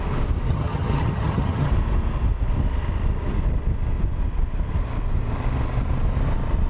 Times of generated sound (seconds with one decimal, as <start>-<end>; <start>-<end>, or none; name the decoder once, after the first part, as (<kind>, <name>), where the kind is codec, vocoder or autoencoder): 0.5-1.7 (vocoder, HiFi-GAN)